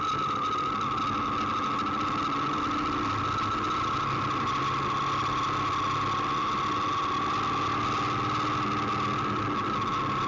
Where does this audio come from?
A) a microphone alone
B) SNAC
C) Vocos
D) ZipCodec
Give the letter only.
A